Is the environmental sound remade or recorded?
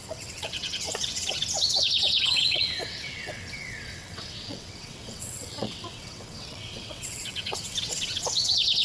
remade